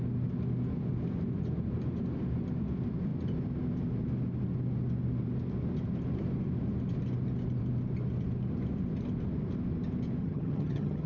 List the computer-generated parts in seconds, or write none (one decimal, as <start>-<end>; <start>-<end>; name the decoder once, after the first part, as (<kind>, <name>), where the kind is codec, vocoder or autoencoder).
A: 10.2-11.1 (vocoder, HiFi-GAN)